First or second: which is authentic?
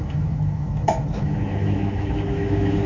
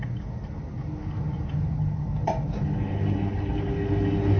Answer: second